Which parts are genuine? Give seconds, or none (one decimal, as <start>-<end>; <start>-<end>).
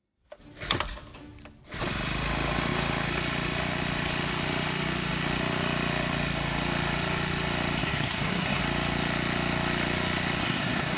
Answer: 0.0-7.8; 8.6-10.4